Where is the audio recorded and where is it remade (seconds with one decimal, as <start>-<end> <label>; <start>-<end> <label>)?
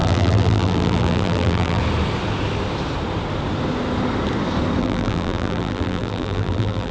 0.0-1.8 remade; 1.8-4.8 recorded; 4.8-6.9 remade